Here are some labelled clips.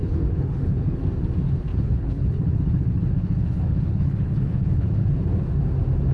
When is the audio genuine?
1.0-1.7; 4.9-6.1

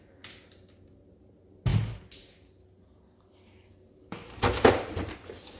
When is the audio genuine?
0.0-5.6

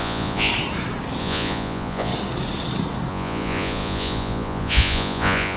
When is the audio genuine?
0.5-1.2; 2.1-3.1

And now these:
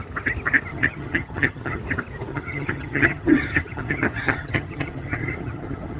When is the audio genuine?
0.0-0.7; 1.8-2.3